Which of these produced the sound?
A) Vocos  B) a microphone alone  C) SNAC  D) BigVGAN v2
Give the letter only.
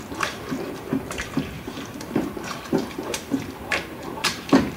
D